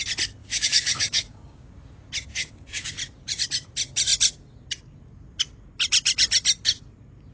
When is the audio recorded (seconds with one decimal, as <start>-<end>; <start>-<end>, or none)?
0.0-0.4; 1.7-2.3; 2.9-7.3